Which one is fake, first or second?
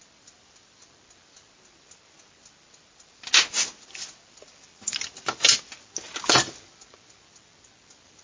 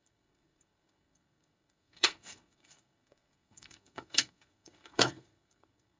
second